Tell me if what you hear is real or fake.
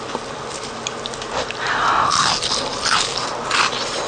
real